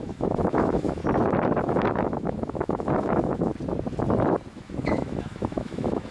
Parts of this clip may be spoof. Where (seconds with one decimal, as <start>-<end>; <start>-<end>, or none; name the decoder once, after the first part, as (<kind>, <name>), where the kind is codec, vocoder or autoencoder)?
0.0-1.0 (autoencoder, DAC-VAE); 1.6-3.5; 4.5-6.1